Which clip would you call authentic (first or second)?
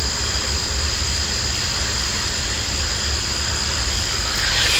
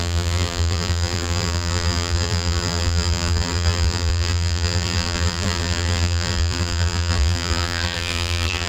first